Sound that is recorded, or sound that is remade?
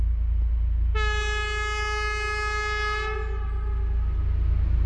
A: recorded